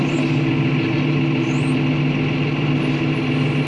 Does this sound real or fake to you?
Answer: real